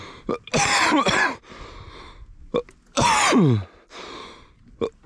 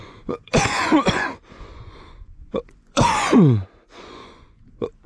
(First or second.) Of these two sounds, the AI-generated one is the second